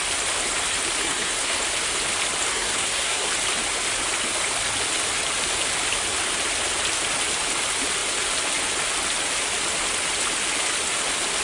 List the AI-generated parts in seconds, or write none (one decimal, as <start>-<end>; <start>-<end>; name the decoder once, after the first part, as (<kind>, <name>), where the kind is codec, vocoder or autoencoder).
1.0-1.6 (codec, SNAC); 2.5-3.3